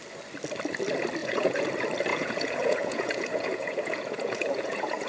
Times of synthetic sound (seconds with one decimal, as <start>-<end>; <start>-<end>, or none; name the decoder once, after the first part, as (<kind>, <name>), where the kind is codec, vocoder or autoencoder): 1.2-1.7 (vocoder, Vocos); 2.1-5.1